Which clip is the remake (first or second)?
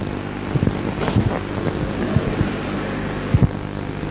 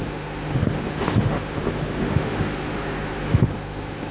second